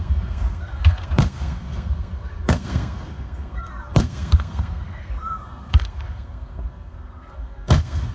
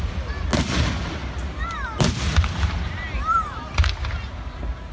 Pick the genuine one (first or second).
second